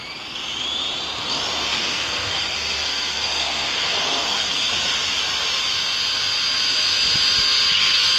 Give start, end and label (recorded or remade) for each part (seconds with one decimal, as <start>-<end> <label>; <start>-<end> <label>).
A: 0.0-1.8 recorded; 1.8-4.7 remade; 4.7-8.2 recorded